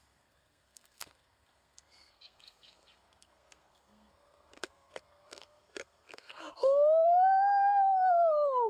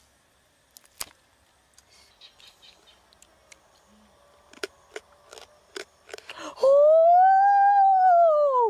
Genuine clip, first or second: second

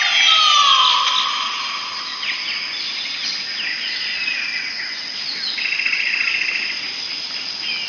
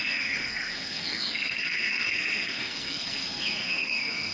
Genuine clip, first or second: first